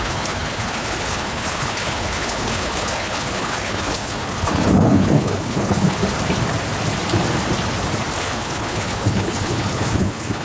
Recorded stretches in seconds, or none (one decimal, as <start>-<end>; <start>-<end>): 6.0-8.2